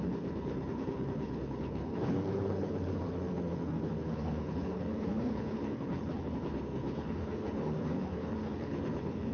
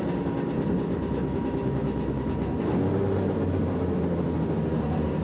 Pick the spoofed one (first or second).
first